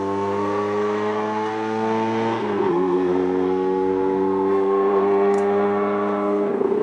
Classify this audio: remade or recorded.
remade